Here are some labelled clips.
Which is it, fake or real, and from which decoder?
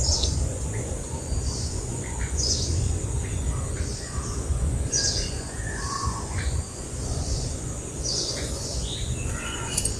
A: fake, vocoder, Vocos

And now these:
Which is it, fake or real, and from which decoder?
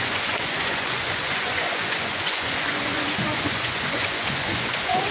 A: fake, vocoder, Vocos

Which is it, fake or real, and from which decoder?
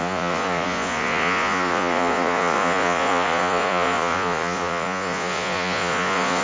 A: fake, vocoder, Vocos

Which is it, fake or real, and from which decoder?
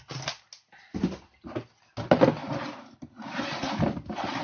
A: real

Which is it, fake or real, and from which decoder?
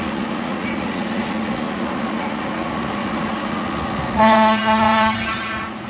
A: fake, vocoder, Vocos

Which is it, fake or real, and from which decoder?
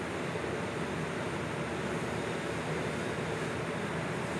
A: real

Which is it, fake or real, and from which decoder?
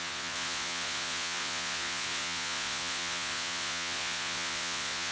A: fake, vocoder, Vocos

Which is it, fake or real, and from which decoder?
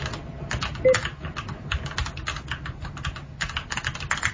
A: real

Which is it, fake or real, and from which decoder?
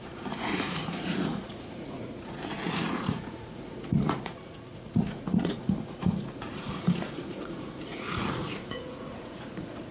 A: fake, vocoder, Vocos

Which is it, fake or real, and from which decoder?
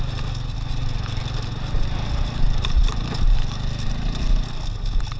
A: real